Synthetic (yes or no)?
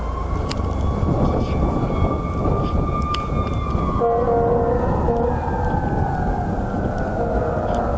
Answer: no